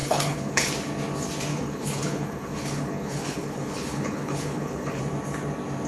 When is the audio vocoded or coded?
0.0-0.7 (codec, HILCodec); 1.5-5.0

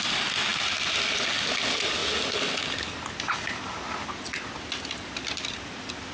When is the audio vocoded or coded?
none

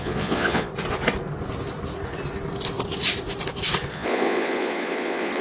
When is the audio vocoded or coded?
0.0-0.7 (vocoder, Vocos); 3.9-5.4

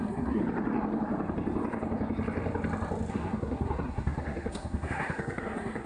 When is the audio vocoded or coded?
0.0-0.4 (codec, SNAC); 3.1-5.9

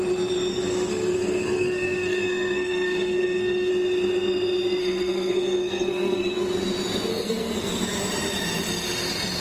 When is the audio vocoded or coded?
0.5-3.7 (codec, SNAC); 4.8-6.3; 7.1-7.8

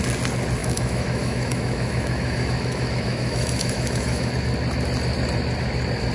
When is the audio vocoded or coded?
0.6-4.3 (autoencoder, DAC-VAE)

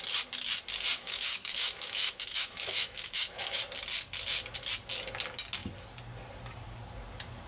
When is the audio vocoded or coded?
0.9-3.6 (autoencoder, DAC-VAE)

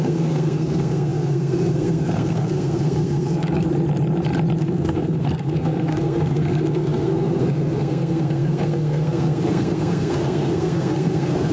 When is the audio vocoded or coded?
0.0-3.6 (codec, SNAC); 4.6-11.5